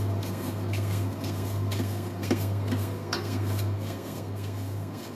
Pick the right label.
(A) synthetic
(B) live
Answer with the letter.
A